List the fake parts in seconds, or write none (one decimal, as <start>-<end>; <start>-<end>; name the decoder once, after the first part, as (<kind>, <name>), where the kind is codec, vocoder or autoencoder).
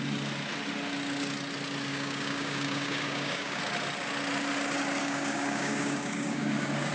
1.9-3.6 (codec, DAC); 5.0-6.9